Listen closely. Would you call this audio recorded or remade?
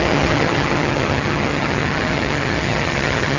remade